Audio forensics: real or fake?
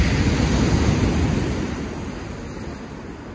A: real